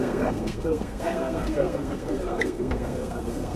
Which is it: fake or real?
fake